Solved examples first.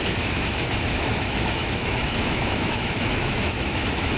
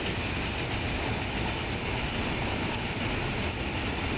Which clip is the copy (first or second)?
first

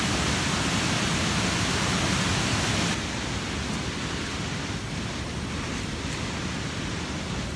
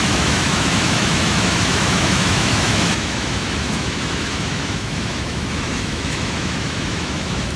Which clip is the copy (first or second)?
second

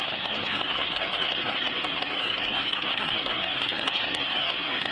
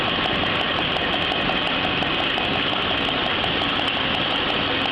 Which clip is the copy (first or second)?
first